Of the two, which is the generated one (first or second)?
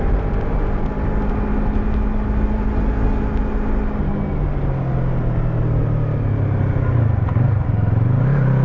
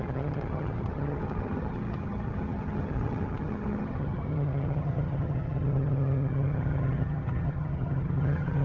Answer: second